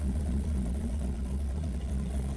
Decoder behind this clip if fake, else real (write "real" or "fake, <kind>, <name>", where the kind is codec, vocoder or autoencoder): fake, vocoder, Vocos